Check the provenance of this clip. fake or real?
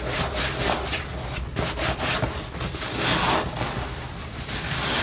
real